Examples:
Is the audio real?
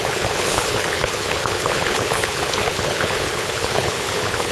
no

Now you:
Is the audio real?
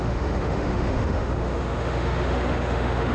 no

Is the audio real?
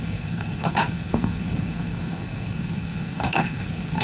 no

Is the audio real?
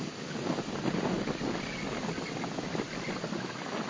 yes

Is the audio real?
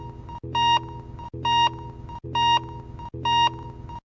yes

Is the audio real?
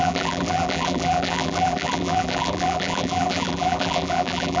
no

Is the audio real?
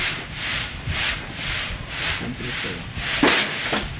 yes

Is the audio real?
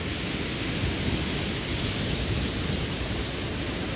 yes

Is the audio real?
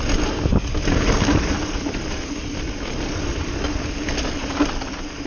yes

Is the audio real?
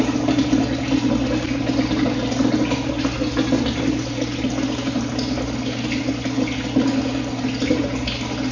yes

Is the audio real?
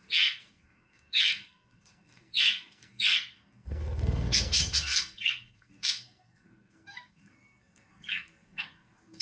no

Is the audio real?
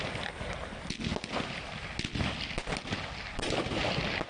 yes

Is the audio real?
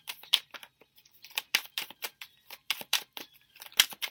no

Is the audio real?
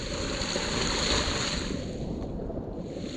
yes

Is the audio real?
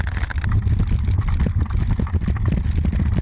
yes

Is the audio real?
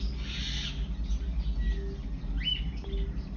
yes